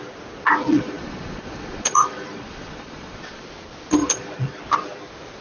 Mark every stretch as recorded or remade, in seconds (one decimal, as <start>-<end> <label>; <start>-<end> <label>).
0.0-0.7 recorded; 0.7-3.4 remade; 3.4-4.0 recorded; 4.0-4.6 remade; 4.6-5.4 recorded